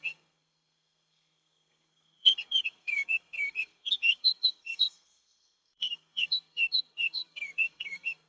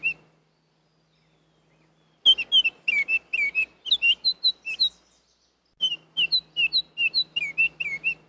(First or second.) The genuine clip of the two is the second